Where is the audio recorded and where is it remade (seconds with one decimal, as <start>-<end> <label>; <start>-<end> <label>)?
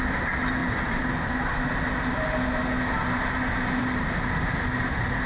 0.0-5.3 recorded